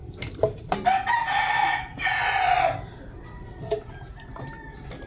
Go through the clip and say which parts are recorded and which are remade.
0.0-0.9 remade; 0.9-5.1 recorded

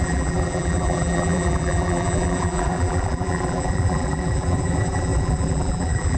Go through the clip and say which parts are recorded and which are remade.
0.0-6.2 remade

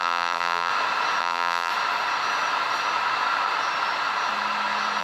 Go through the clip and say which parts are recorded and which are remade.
0.0-0.7 remade; 0.7-1.2 recorded; 1.2-1.7 remade; 1.7-5.0 recorded

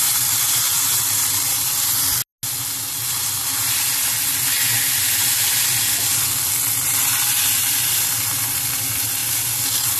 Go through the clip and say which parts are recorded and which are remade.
0.0-2.2 remade; 2.2-7.4 recorded; 7.4-9.2 remade; 9.2-10.0 recorded

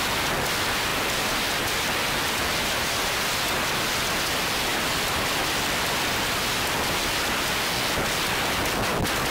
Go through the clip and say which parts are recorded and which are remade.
0.0-4.7 recorded; 4.7-5.4 remade; 5.4-9.3 recorded